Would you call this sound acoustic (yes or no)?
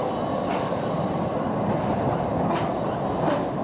yes